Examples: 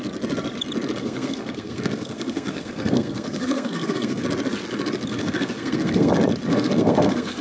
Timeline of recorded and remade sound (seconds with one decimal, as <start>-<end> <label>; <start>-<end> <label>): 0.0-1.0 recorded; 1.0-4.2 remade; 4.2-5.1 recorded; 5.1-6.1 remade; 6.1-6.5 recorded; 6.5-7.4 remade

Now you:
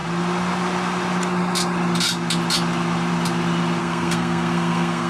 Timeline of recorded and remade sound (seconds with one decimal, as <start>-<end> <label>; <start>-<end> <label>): 0.0-3.8 recorded; 3.8-5.1 remade

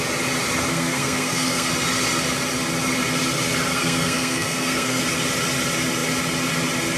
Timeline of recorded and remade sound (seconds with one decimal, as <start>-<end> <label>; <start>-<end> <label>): 0.0-0.7 recorded; 0.7-1.7 remade; 1.7-3.7 recorded; 3.7-5.0 remade; 5.0-7.0 recorded

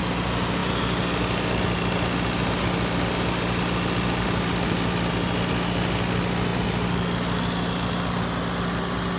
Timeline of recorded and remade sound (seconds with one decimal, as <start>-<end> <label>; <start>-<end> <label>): 0.0-0.6 recorded; 0.6-5.1 remade; 5.1-6.5 recorded; 6.5-8.2 remade; 8.2-9.2 recorded

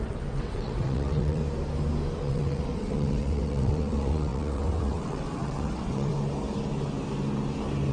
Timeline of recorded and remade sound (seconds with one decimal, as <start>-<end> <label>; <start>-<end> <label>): 0.0-1.4 remade; 1.4-2.2 recorded; 2.2-6.1 remade; 6.1-7.9 recorded

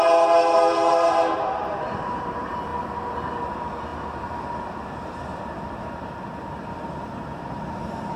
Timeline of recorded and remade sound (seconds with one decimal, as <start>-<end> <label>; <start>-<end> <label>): 0.0-2.7 remade; 2.7-3.4 recorded; 3.4-3.9 remade; 3.9-4.4 recorded; 4.4-8.2 remade

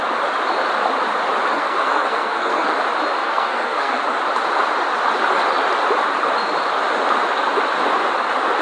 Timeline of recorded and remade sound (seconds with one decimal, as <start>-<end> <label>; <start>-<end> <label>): 0.0-1.5 recorded; 1.5-2.8 remade; 2.8-3.2 recorded; 3.2-4.0 remade; 4.0-8.6 recorded

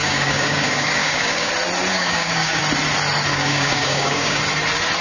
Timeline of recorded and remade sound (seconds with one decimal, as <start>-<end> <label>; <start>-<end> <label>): 0.0-1.5 remade; 1.5-1.9 recorded; 1.9-2.6 remade; 2.6-3.3 recorded; 3.3-4.4 remade; 4.4-5.0 recorded